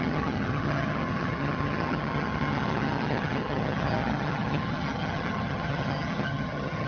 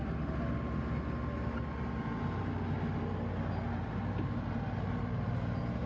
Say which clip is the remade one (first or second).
first